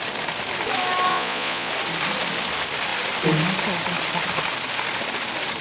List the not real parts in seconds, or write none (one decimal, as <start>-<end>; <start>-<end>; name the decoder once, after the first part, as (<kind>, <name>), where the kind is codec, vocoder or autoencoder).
1.1-1.7 (vocoder, Vocos)